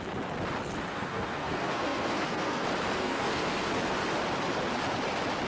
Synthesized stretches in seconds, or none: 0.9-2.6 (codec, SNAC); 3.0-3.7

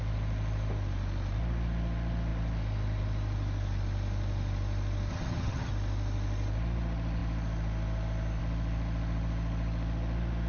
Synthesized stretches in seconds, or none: 5.1-5.7 (vocoder, HiFi-GAN)

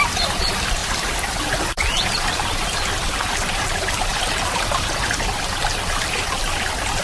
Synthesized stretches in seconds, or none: 0.8-2.5 (vocoder, BigVGAN v2)

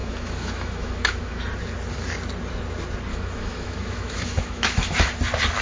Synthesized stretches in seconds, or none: 0.0-1.4 (autoencoder, DAC-VAE); 3.1-5.1

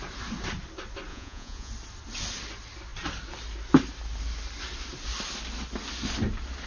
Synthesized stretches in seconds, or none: 1.1-1.7 (vocoder, Vocos)